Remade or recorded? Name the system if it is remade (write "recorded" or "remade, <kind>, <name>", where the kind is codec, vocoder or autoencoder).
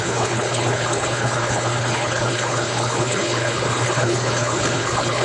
remade, codec, HILCodec